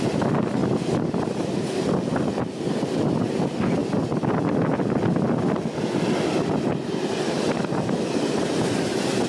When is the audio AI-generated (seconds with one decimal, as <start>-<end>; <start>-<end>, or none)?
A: none